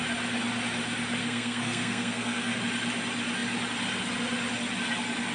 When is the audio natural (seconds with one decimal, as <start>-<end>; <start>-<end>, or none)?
0.0-1.2; 2.6-5.3